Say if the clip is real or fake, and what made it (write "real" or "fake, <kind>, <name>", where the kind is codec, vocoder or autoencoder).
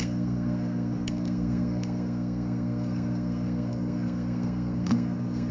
fake, codec, SNAC